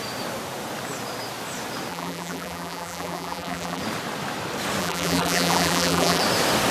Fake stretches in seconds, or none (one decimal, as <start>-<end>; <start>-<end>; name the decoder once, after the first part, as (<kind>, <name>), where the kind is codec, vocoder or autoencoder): 1.9-3.8 (vocoder, BigVGAN v2); 4.8-6.2